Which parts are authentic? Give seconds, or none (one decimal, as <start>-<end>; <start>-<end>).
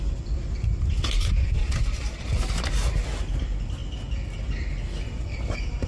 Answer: 0.0-5.9